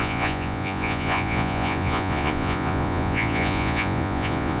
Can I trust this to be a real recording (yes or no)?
no